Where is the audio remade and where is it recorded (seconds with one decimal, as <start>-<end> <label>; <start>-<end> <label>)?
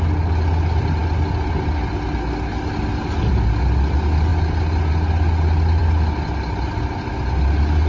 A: 0.0-7.9 recorded